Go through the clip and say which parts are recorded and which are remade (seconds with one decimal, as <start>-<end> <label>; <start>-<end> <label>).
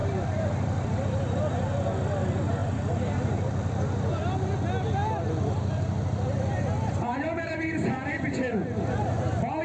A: 0.0-1.0 remade; 1.0-2.6 recorded; 2.6-4.2 remade; 4.2-5.0 recorded; 5.0-9.6 remade